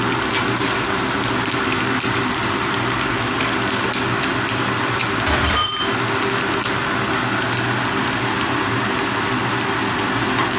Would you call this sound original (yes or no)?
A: yes